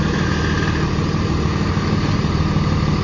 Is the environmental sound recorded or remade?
recorded